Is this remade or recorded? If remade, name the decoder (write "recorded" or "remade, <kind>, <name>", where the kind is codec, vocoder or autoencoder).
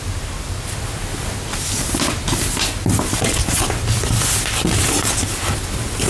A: recorded